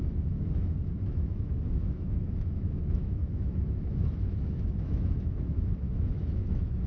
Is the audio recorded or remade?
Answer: remade